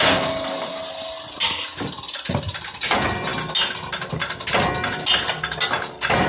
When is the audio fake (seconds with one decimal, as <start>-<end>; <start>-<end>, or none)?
none